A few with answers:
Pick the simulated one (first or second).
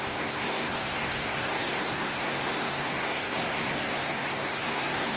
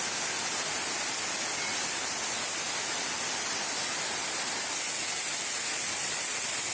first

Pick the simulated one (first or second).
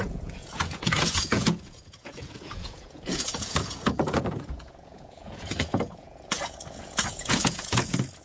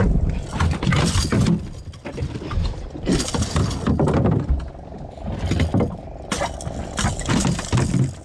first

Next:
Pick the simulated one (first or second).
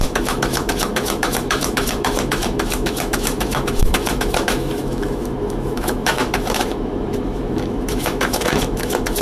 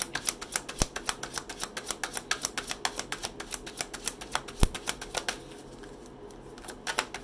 first